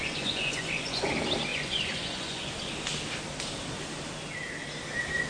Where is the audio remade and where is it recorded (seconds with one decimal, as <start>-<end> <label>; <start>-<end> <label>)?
0.0-1.1 remade; 1.1-1.5 recorded; 1.5-2.5 remade; 2.5-5.3 recorded